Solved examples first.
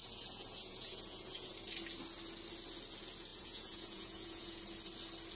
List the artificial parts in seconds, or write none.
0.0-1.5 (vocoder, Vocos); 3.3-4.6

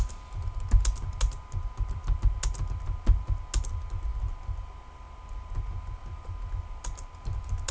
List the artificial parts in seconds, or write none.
none

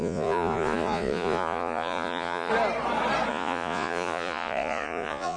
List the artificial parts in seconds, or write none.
0.0-2.5 (vocoder, Vocos); 3.3-5.4

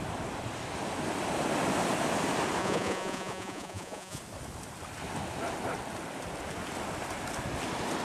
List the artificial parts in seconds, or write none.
2.6-4.2 (vocoder, Vocos)

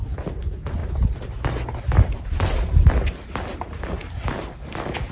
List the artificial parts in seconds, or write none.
none

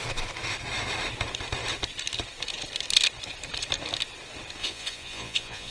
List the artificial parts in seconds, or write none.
4.6-5.7 (vocoder, Vocos)